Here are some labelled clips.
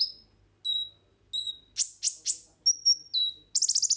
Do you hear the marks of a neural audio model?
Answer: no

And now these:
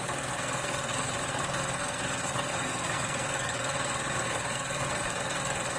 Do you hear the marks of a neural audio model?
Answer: yes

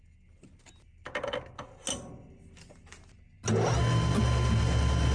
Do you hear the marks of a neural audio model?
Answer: no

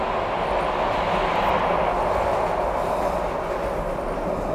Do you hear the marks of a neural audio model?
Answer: no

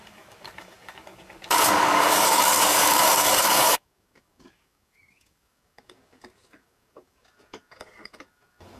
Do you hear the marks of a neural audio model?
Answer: yes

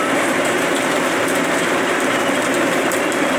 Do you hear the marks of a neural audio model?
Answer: yes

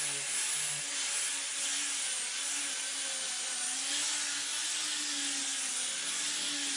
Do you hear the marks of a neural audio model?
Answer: no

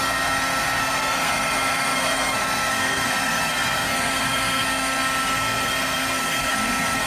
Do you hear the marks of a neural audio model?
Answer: yes